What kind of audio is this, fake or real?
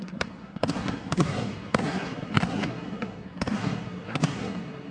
fake